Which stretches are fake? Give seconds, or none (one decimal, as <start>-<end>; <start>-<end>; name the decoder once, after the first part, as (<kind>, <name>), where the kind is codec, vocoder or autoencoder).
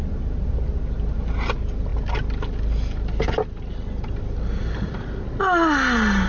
none